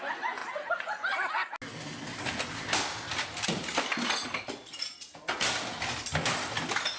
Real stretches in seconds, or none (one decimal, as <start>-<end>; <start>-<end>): 0.0-7.0